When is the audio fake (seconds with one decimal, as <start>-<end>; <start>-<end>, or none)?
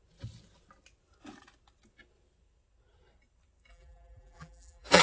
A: 3.7-5.0